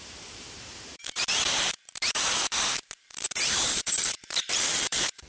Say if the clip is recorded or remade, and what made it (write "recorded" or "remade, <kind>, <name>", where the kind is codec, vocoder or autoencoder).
remade, vocoder, BigVGAN v2